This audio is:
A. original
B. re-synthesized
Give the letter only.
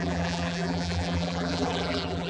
B